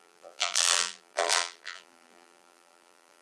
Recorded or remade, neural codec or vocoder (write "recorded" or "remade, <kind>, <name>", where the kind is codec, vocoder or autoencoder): remade, vocoder, BigVGAN v2